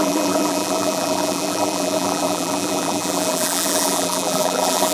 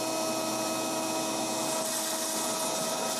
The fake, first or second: first